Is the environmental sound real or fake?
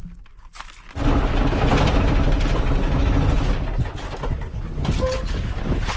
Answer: real